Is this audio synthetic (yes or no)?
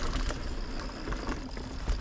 no